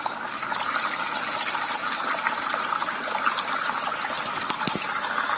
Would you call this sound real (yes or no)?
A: yes